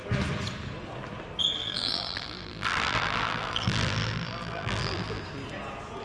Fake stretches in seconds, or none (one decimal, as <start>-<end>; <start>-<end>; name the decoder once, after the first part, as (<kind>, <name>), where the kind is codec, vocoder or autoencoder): 1.6-5.2 (vocoder, BigVGAN v2)